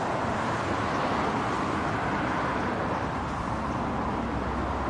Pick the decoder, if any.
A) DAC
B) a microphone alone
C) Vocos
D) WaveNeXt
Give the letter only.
B